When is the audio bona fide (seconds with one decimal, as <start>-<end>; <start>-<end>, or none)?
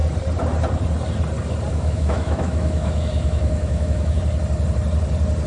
0.0-1.7; 4.2-5.5